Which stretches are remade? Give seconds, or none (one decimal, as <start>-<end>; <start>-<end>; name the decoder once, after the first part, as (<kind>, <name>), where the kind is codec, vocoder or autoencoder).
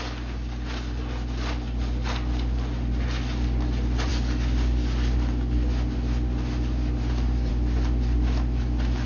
none